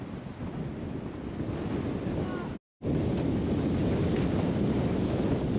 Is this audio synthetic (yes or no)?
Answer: no